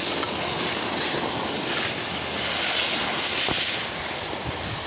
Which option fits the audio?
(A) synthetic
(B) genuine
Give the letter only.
B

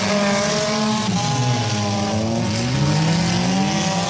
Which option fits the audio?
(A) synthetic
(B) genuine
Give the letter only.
B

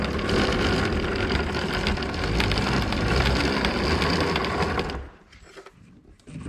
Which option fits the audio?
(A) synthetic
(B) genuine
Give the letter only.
B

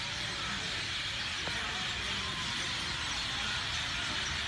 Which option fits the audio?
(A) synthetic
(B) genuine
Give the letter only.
B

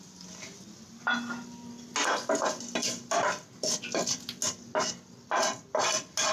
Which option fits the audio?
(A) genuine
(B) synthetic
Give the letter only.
A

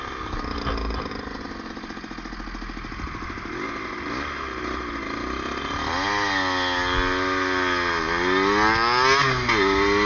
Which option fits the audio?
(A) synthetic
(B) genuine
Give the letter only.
B